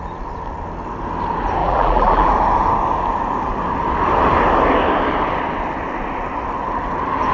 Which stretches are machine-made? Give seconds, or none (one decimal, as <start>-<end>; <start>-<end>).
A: 1.6-2.3